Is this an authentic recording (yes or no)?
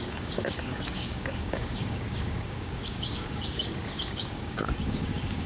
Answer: no